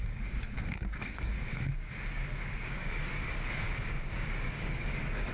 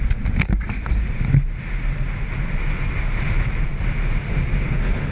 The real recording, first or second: second